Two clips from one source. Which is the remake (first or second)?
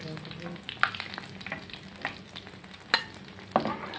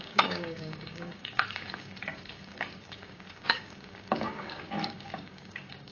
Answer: second